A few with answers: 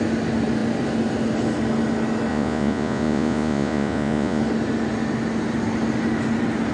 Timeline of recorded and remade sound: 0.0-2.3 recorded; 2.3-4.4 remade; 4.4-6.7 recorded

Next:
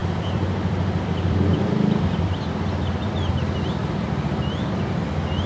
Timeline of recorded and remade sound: 0.0-3.3 remade; 3.3-3.8 recorded; 3.8-5.5 remade

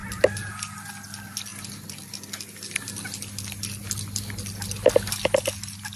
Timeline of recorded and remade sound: 0.0-6.0 recorded

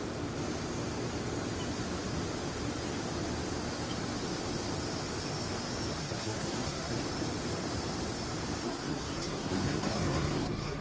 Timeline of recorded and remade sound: 0.0-6.0 recorded; 6.0-7.0 remade; 7.0-8.6 recorded; 8.6-10.8 remade